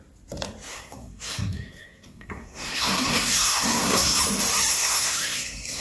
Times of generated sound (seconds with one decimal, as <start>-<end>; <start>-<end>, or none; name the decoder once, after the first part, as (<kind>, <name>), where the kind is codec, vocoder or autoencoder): 0.7-4.2 (codec, SNAC); 4.7-5.8